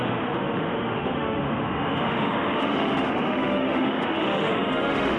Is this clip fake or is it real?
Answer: fake